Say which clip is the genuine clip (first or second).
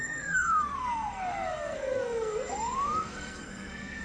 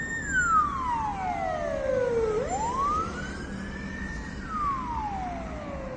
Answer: second